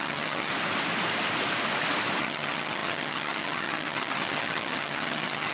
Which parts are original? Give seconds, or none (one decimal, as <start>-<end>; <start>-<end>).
0.5-2.2